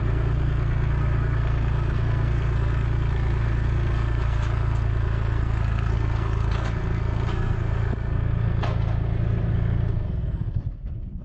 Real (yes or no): no